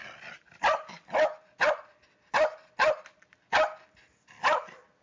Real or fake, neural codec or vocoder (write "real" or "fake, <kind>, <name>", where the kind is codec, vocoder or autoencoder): real